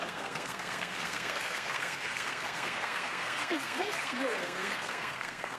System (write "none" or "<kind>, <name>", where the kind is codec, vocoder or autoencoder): codec, SNAC